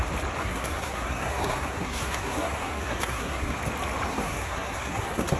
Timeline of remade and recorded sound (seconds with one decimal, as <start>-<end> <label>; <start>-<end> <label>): 0.0-0.4 recorded; 0.4-3.6 remade; 3.6-4.1 recorded; 4.1-5.4 remade